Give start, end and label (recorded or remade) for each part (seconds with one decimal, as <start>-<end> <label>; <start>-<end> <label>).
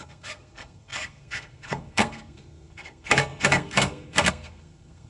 0.0-5.1 remade